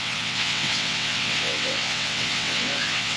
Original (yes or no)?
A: no